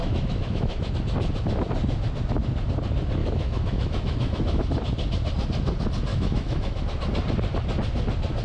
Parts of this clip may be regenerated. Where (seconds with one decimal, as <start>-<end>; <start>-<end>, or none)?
0.0-0.9; 3.2-4.7; 6.1-6.8